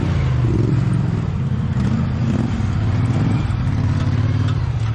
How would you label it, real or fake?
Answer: real